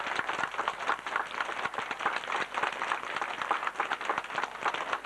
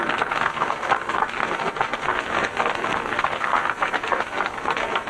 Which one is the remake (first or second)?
second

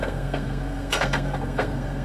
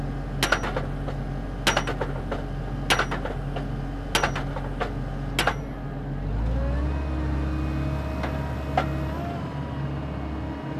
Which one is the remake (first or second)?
first